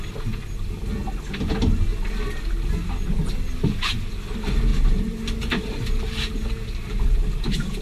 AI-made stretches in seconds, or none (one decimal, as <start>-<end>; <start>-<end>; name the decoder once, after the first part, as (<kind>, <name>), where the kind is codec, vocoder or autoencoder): 4.7-7.2 (vocoder, BigVGAN v2)